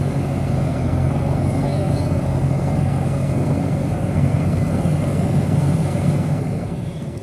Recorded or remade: remade